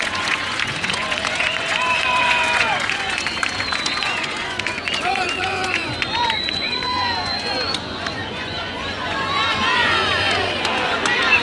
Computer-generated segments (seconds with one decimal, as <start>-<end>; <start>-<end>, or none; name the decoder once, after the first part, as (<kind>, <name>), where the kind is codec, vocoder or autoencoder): 0.0-11.4 (vocoder, Vocos)